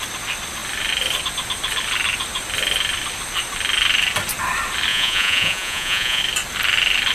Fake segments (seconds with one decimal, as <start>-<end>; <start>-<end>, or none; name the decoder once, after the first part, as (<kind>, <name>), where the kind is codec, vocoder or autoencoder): 4.9-6.2 (vocoder, Vocos)